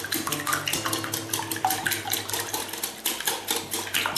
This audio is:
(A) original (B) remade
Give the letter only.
A